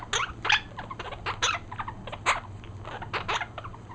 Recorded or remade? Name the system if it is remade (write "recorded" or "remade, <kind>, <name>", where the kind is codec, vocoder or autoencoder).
recorded